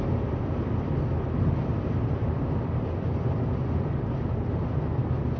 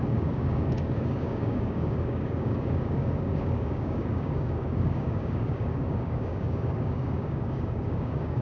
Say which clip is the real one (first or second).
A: first